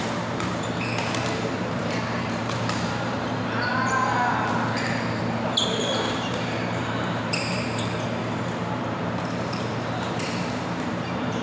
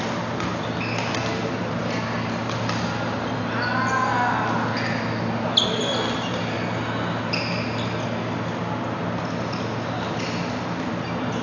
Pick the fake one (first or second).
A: first